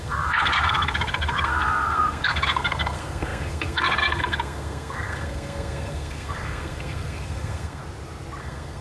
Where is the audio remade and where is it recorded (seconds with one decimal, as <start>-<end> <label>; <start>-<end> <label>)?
0.0-7.8 remade; 7.8-8.4 recorded; 8.4-8.8 remade